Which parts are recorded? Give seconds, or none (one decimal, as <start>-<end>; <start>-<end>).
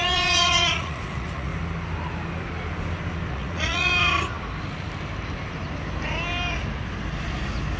1.5-3.3; 3.9-7.8